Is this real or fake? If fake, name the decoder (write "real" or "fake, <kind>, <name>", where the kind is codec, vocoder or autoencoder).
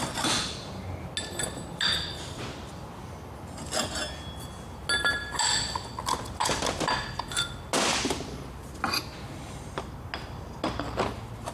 real